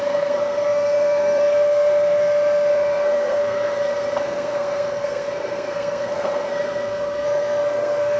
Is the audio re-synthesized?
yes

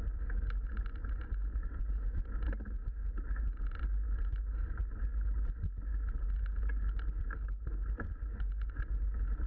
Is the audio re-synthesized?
no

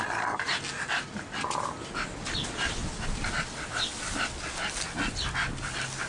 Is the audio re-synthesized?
no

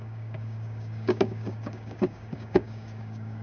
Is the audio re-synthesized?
yes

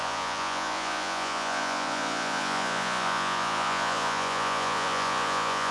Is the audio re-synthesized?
yes